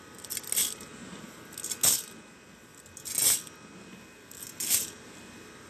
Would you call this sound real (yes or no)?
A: yes